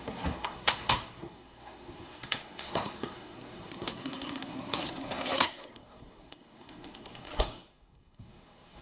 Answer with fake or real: fake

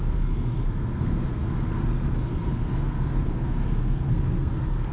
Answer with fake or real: fake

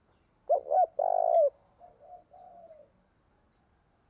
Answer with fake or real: real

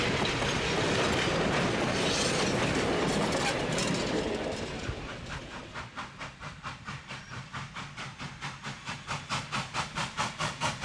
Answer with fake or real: real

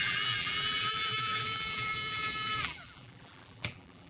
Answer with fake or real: fake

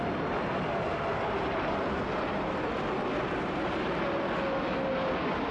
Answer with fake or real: real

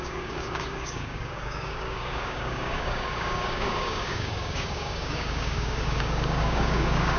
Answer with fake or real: fake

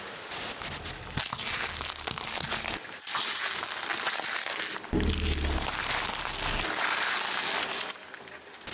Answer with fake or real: real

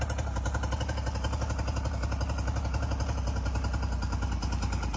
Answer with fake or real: real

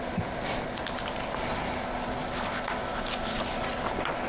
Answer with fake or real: real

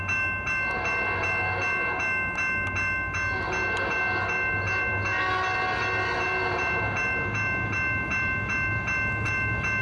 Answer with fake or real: real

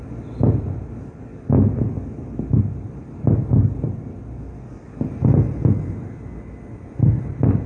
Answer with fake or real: real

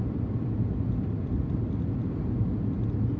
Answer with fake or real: real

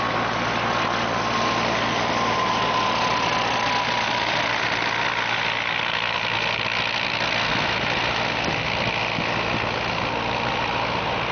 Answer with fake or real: real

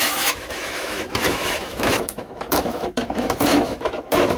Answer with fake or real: fake